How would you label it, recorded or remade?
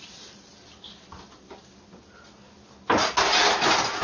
recorded